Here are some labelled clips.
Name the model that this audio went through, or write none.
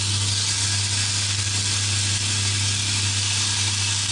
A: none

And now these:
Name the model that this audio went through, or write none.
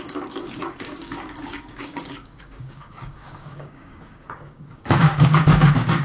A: codec, DAC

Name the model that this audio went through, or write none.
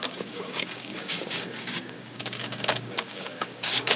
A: codec, DAC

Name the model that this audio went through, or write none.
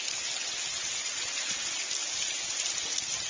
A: none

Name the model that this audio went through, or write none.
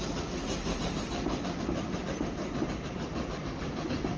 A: none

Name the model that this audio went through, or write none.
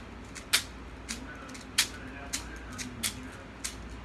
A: none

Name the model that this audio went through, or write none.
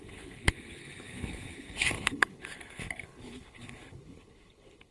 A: codec, HILCodec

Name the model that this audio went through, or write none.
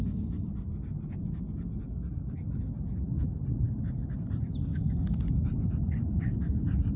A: none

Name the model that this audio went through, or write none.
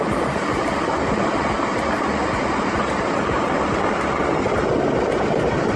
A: none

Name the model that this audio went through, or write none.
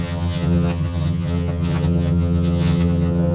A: vocoder, HiFi-GAN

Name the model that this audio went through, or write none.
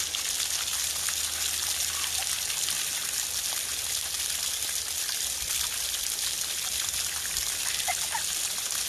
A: none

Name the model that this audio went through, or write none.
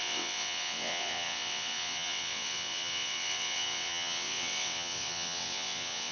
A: vocoder, WaveNeXt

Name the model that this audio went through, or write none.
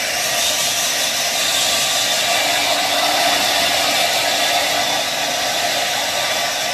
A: vocoder, BigVGAN v2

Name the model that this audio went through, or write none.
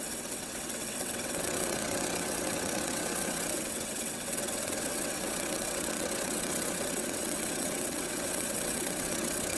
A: vocoder, WaveNeXt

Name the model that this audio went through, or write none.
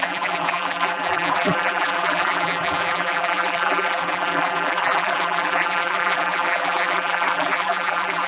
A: vocoder, BigVGAN v2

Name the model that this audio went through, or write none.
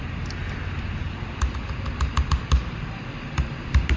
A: none